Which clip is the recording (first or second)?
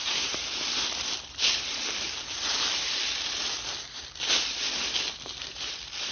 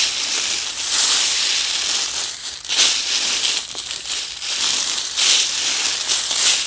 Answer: second